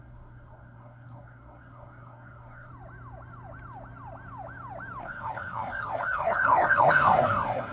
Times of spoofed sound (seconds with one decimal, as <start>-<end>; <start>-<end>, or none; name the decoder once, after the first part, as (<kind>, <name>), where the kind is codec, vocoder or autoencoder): 0.0-2.7 (codec, SNAC); 5.0-7.7